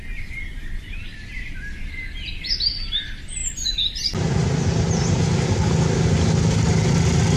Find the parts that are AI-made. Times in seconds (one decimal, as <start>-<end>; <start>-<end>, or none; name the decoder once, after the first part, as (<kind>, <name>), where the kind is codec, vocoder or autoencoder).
none